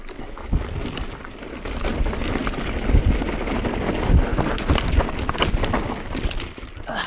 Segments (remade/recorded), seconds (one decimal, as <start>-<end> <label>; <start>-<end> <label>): 0.0-7.1 recorded